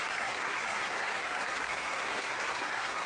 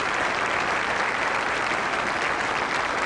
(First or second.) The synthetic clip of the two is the first